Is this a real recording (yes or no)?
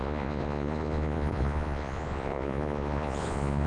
no